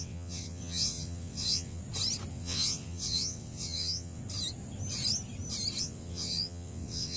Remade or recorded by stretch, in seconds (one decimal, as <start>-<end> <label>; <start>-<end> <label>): 0.0-1.8 remade; 1.8-2.3 recorded; 2.3-4.2 remade; 4.2-5.8 recorded; 5.8-7.2 remade